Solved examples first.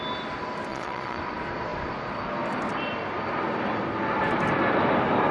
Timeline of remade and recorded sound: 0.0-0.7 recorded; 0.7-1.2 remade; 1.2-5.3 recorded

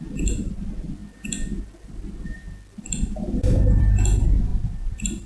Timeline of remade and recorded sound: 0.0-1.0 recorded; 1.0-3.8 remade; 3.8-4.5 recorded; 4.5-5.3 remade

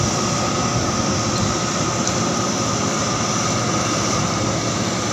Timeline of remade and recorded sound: 0.0-0.7 remade; 0.7-2.1 recorded; 2.1-3.0 remade; 3.0-3.8 recorded; 3.8-5.1 remade

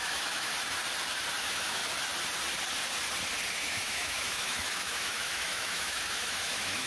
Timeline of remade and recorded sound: 0.0-0.5 remade; 0.5-1.4 recorded; 1.4-1.8 remade; 1.8-3.5 recorded; 3.5-6.9 remade